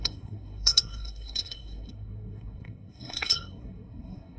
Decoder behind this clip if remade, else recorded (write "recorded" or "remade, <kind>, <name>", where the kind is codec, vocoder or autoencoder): remade, codec, SNAC